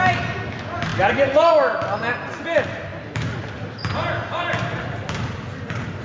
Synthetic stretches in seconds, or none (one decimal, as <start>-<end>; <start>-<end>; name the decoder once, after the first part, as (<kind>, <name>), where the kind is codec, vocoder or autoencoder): none